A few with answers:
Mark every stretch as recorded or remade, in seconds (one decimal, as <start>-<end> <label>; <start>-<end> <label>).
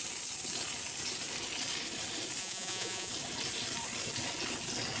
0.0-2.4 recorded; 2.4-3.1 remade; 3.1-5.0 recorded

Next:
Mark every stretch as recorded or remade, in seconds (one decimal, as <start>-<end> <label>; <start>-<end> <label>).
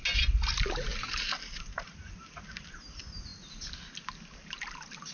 0.0-0.9 recorded; 0.9-2.4 remade; 2.4-5.1 recorded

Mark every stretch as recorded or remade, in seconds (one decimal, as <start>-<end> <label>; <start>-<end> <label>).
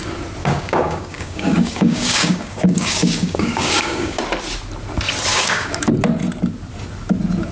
0.0-0.4 recorded; 0.4-4.2 remade; 4.2-5.3 recorded; 5.3-5.9 remade; 5.9-7.5 recorded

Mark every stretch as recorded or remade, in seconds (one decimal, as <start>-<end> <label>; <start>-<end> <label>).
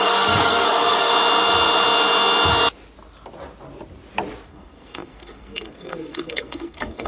0.0-1.1 remade; 1.1-4.5 recorded; 4.5-7.1 remade